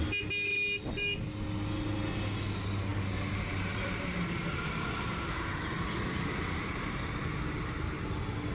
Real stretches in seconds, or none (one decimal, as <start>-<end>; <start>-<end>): 0.0-2.9; 8.0-8.5